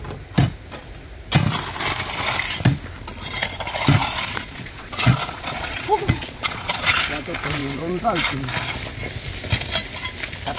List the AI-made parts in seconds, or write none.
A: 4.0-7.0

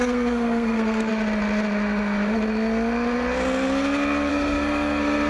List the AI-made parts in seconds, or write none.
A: 0.0-1.1; 4.3-5.3

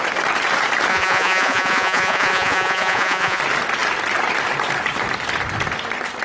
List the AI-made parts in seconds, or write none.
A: 0.9-3.4

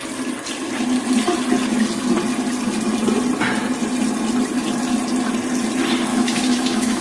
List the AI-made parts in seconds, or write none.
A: 6.1-7.0

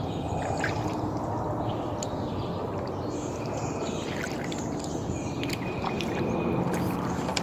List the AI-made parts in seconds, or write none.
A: none

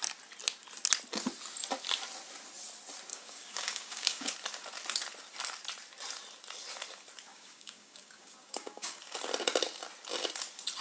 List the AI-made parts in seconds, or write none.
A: 3.1-4.3; 7.3-9.0